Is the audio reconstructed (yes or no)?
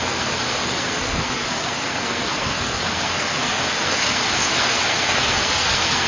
yes